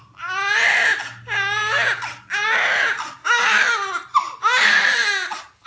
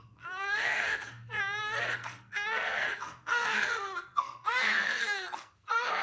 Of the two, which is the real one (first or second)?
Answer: first